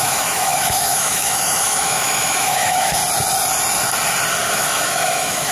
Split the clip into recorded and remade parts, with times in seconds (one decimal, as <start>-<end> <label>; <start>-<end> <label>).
0.0-3.0 remade; 3.0-4.5 recorded; 4.5-5.5 remade